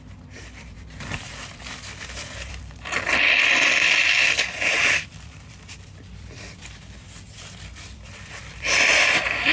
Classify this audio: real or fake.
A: fake